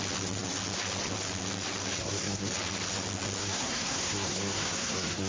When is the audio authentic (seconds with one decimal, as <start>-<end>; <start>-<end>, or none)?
0.0-2.0; 2.5-3.4